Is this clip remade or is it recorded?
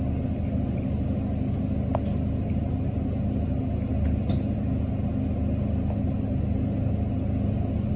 recorded